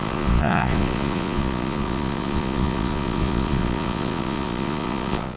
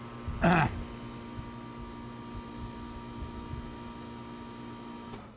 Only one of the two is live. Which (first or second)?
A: second